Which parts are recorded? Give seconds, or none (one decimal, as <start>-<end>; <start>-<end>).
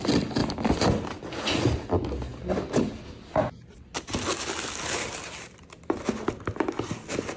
0.0-0.4; 1.0-7.4